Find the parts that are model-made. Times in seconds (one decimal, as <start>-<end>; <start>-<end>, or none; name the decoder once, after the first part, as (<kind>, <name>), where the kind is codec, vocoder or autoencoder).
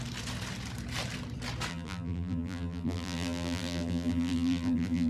1.7-5.1 (vocoder, BigVGAN v2)